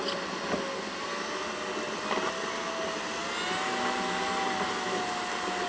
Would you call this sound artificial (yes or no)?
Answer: no